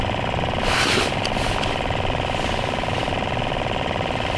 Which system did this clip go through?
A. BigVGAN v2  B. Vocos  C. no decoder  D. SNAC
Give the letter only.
C